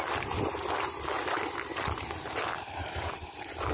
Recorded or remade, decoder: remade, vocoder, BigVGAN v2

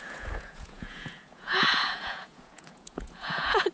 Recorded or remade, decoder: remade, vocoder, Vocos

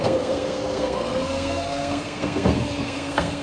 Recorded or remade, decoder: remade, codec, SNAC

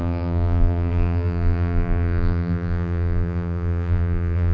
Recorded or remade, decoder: remade, vocoder, BigVGAN v2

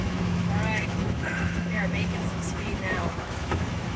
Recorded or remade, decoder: remade, autoencoder, DAC-VAE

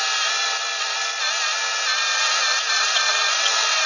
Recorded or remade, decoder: recorded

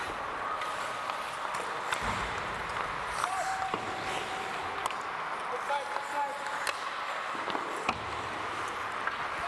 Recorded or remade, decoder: recorded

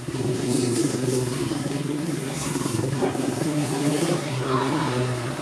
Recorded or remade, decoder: remade, codec, SNAC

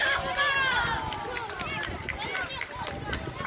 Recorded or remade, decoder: recorded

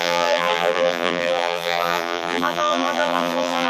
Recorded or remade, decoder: remade, vocoder, BigVGAN v2